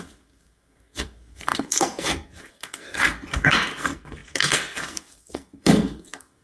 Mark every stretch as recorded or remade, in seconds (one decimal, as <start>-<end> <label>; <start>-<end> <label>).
0.0-6.4 remade